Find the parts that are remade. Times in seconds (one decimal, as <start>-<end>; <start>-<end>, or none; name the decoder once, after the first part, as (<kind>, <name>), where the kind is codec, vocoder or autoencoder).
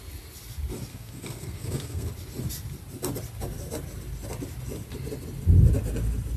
0.9-2.1 (codec, SNAC)